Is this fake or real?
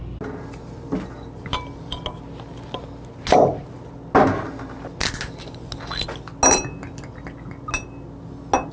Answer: real